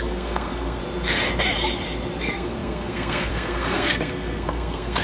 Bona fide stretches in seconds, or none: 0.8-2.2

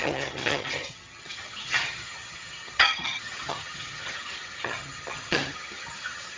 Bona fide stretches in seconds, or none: none

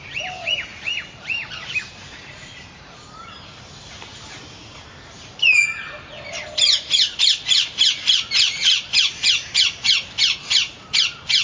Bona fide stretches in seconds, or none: 0.0-0.7; 5.2-7.2; 11.0-11.4

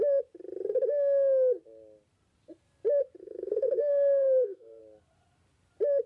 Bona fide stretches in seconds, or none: 0.0-3.2; 4.8-6.1

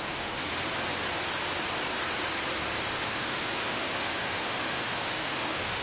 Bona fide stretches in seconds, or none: 0.4-2.9

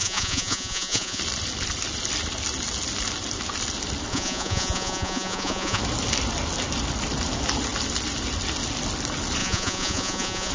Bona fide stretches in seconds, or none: 1.2-4.1; 5.8-9.4